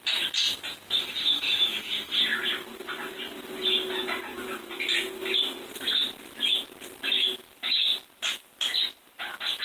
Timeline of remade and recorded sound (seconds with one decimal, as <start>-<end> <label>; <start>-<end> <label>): 0.0-1.0 recorded; 1.0-2.2 remade; 2.2-9.6 recorded